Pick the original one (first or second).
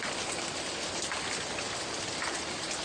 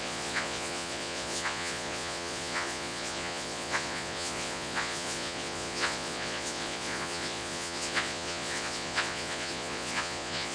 first